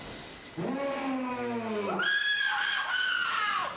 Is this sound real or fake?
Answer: real